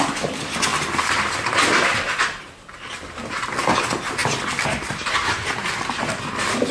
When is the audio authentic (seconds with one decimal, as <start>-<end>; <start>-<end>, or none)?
0.0-0.7; 2.2-4.2; 5.7-6.7

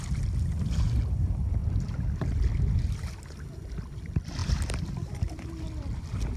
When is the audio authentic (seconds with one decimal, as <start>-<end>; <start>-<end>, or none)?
0.0-1.6; 3.2-4.4; 6.0-6.4

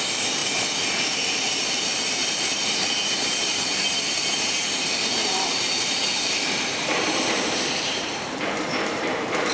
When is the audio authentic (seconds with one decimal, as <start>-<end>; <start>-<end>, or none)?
0.4-1.0

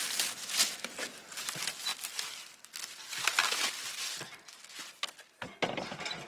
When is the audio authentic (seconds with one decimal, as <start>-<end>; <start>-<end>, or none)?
0.0-6.3

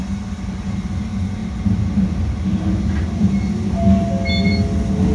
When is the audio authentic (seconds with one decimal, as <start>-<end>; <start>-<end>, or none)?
0.0-5.1

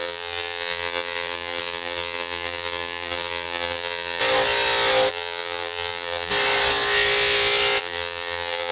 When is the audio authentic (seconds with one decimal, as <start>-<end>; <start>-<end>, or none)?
4.2-5.1; 6.3-7.8

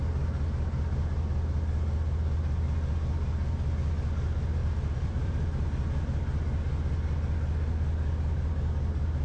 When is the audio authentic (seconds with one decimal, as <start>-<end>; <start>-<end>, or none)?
0.0-4.6; 5.9-9.2